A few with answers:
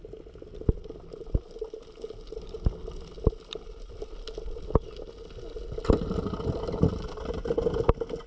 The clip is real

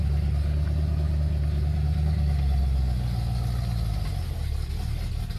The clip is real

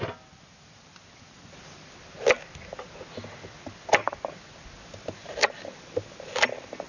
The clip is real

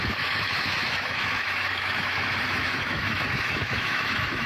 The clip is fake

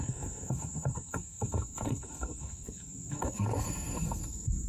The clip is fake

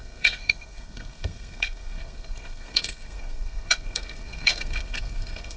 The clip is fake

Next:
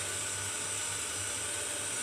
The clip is real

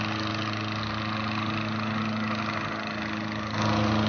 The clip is real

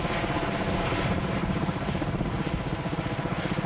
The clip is fake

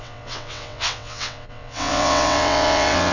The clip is fake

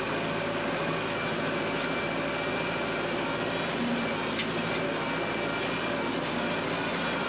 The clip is real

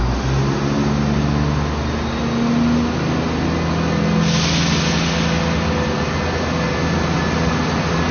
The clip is real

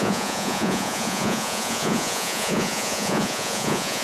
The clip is fake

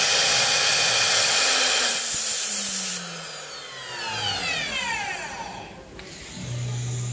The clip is real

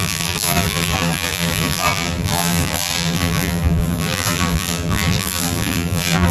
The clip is fake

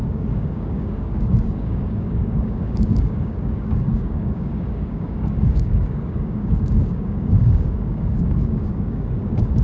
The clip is fake